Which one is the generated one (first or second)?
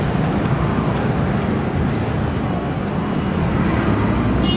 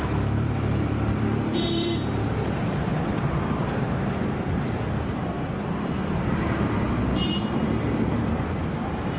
second